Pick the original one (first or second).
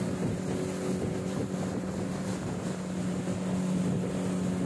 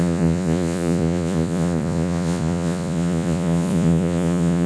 first